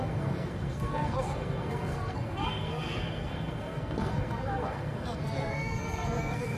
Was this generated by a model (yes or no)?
yes